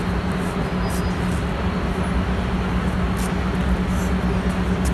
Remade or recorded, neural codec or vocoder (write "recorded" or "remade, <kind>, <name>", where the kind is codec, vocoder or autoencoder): recorded